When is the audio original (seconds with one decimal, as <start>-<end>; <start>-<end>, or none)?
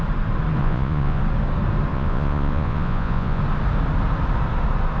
0.0-0.6; 1.2-1.9; 3.4-5.0